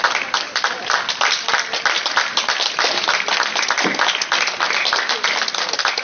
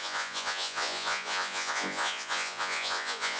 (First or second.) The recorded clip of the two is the first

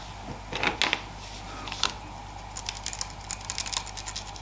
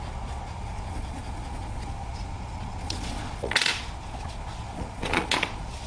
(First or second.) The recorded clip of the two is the first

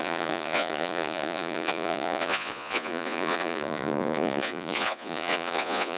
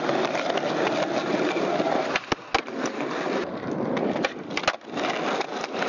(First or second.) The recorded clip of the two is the second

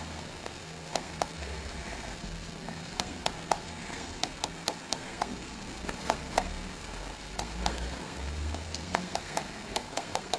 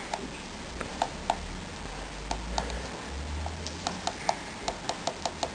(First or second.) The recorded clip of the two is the second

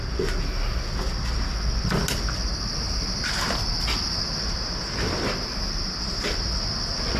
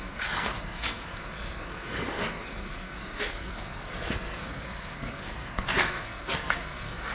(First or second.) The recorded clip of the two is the first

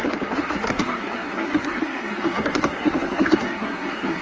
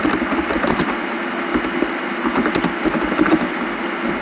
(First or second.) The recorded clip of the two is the second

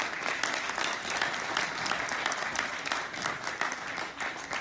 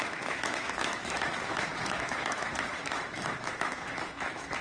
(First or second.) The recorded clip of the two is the first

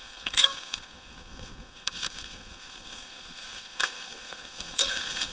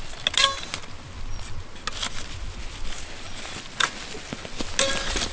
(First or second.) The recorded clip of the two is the second